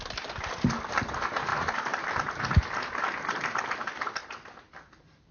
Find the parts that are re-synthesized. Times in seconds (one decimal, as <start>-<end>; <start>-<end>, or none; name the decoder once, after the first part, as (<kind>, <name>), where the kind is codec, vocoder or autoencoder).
none